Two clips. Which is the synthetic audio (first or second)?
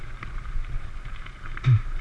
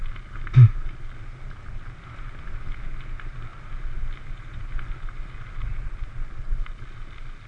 first